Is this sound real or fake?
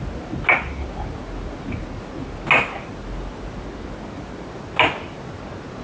real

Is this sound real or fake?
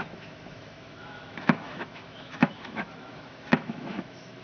fake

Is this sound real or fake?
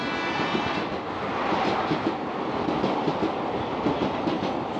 real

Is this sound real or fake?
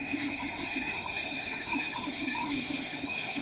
fake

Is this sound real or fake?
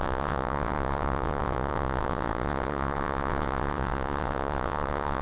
fake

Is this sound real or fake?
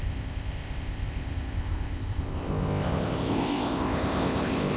fake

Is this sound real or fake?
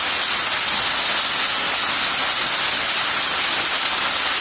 real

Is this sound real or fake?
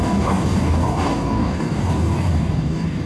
fake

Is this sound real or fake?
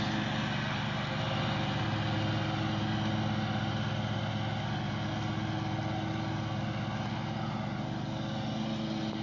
real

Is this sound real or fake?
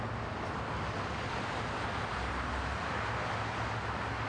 real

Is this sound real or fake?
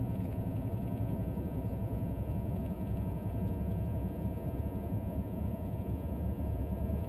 fake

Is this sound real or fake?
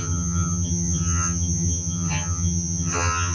fake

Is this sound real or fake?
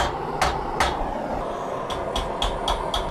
real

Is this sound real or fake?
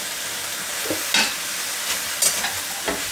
real